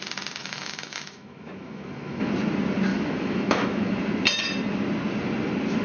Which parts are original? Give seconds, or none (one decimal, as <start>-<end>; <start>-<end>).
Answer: 0.0-0.4; 2.3-2.9; 4.0-5.8